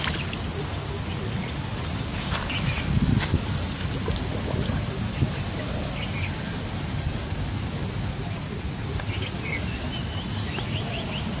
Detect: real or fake real